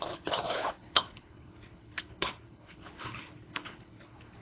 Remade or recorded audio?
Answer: remade